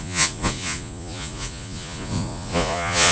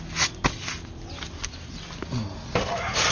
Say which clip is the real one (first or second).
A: second